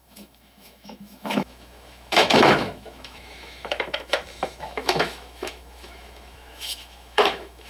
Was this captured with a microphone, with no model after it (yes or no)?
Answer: no